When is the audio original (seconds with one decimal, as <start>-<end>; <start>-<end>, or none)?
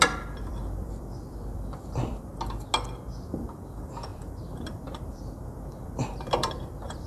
2.3-3.3